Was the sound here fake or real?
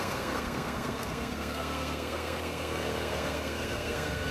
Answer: fake